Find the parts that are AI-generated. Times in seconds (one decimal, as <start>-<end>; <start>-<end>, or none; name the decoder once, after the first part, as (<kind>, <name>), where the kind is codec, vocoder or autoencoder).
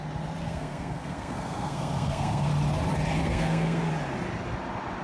0.4-2.5 (codec, SNAC); 3.2-3.9